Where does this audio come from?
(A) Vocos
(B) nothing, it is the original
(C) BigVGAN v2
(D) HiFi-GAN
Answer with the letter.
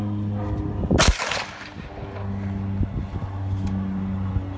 B